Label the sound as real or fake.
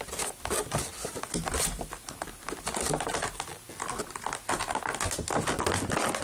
real